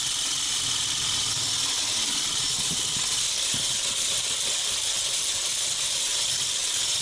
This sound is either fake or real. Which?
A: real